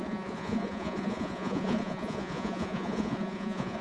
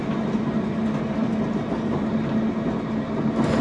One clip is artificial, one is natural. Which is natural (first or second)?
second